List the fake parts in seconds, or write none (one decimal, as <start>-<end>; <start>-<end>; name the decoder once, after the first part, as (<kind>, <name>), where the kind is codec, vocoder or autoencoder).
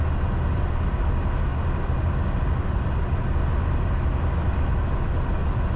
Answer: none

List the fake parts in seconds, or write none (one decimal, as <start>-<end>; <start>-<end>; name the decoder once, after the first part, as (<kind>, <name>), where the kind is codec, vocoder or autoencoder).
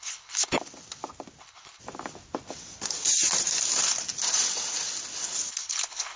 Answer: 0.0-0.6 (codec, HILCodec); 1.4-1.8; 5.5-6.2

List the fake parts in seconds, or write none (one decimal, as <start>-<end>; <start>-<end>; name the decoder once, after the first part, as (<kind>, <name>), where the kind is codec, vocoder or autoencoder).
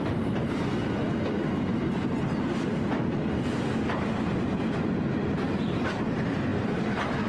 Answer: none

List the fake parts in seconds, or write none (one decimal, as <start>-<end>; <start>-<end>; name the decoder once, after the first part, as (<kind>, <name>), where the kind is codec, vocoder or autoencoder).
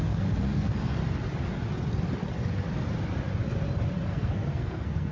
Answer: 0.0-1.0 (codec, SNAC); 4.1-5.1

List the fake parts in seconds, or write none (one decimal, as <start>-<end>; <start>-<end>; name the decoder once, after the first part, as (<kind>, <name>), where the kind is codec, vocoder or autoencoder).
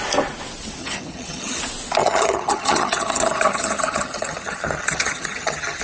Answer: 0.8-1.6 (vocoder, HiFi-GAN); 2.0-5.8